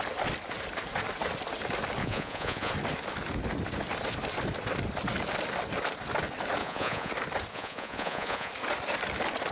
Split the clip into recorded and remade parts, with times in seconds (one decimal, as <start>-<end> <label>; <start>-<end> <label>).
0.0-2.0 recorded; 2.0-2.7 remade; 2.7-6.6 recorded; 6.6-7.1 remade; 7.1-7.5 recorded; 7.5-8.5 remade; 8.5-9.5 recorded